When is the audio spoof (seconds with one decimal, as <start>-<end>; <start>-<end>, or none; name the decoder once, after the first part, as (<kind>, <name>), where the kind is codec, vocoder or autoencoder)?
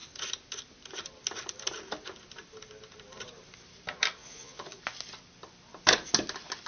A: 4.2-4.8 (vocoder, Vocos)